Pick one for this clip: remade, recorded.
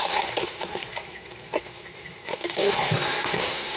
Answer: remade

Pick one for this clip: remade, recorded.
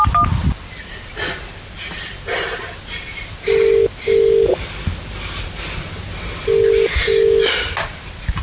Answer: recorded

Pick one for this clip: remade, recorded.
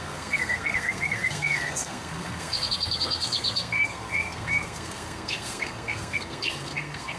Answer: remade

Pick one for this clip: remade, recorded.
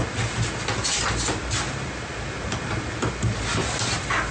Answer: recorded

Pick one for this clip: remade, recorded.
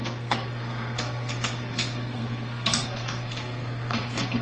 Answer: remade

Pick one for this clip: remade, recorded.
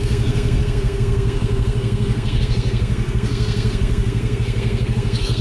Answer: remade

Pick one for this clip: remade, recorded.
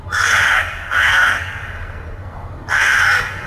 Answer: remade